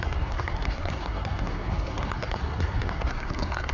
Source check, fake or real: fake